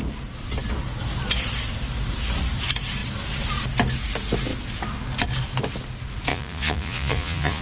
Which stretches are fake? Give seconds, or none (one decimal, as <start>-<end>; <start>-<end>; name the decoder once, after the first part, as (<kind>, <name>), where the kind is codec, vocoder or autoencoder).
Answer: 6.3-7.6 (vocoder, Vocos)